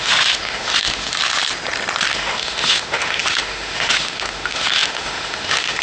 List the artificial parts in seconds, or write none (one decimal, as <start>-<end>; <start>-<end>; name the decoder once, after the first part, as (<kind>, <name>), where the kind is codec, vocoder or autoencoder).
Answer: 0.0-1.4 (autoencoder, DAC-VAE); 2.1-5.8